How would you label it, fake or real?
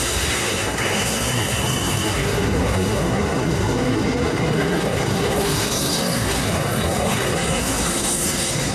fake